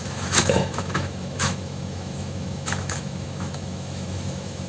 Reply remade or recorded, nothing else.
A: remade